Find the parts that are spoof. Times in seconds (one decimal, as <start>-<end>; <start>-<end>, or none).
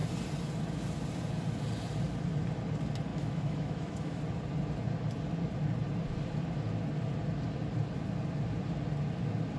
3.1-4.2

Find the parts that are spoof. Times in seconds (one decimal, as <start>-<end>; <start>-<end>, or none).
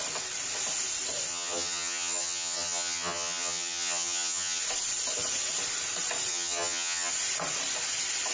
1.3-4.6; 6.3-7.1